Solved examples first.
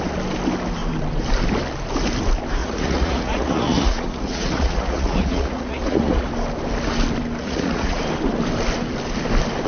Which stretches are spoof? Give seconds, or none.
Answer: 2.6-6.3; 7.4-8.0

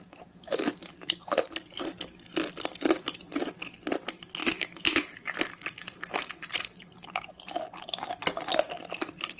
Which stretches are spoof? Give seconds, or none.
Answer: 4.4-5.5